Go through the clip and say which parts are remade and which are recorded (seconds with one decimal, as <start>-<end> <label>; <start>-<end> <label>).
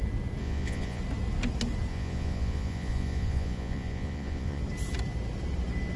0.0-0.4 recorded; 0.4-1.0 remade; 1.0-1.9 recorded; 1.9-4.6 remade; 4.6-6.0 recorded